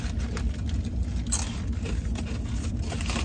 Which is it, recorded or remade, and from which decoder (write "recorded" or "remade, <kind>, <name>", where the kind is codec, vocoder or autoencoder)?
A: recorded